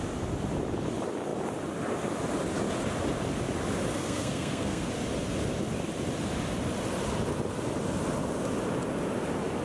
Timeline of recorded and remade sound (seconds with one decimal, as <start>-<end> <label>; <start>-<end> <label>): 0.0-3.9 recorded; 3.9-4.9 remade; 4.9-9.6 recorded